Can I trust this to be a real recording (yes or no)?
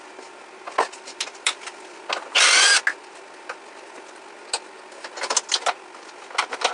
yes